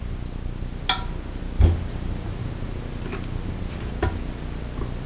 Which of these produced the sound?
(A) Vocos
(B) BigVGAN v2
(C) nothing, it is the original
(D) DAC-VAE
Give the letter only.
C